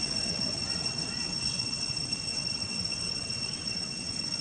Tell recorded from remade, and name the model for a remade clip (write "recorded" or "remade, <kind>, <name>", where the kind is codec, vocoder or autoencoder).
remade, vocoder, WaveNeXt